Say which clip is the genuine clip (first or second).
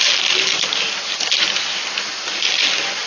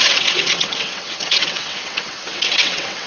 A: first